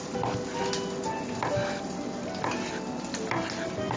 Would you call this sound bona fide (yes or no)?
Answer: yes